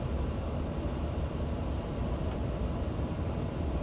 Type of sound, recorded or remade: recorded